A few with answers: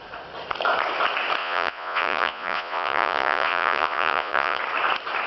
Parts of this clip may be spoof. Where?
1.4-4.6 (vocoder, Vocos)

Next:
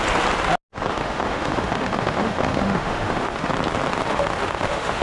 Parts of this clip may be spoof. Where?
0.9-3.5 (autoencoder, DAC-VAE); 4.1-5.0

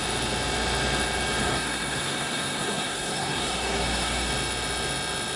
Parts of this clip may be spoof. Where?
1.4-4.3 (codec, SNAC)

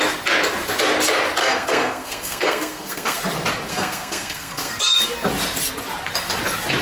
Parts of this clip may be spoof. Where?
1.4-3.2 (codec, SNAC); 3.7-5.0

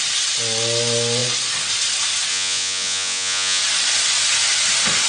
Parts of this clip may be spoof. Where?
2.3-3.6 (vocoder, Vocos)